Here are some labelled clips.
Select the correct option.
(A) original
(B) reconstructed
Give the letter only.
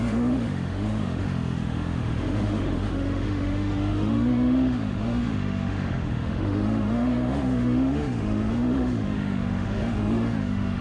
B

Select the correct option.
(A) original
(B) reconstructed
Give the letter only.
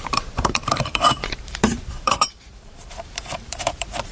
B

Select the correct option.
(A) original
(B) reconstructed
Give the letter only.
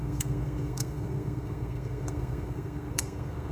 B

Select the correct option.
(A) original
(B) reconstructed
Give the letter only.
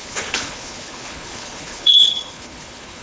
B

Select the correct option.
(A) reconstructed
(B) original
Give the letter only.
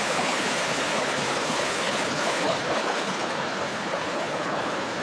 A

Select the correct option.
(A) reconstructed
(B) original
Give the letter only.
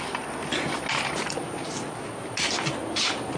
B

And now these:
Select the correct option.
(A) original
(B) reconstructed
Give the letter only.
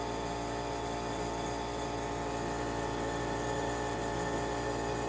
A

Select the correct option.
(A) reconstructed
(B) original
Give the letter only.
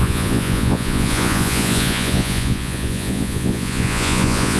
A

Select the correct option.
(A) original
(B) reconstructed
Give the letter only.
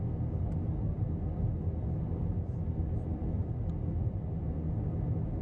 A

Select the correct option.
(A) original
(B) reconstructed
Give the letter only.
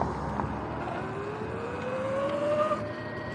A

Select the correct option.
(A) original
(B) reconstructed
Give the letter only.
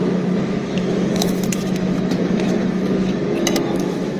B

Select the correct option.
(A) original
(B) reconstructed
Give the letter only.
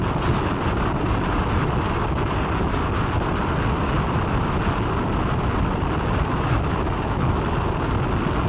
A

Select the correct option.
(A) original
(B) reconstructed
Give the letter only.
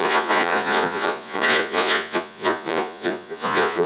B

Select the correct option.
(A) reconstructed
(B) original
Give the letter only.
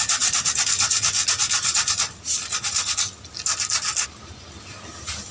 B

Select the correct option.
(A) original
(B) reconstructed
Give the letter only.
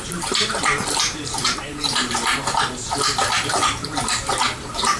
B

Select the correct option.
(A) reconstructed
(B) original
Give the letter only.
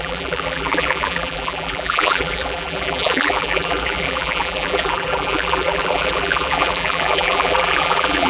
A